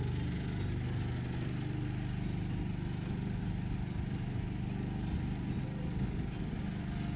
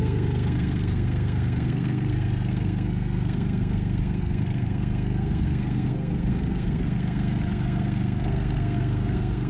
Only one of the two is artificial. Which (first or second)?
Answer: second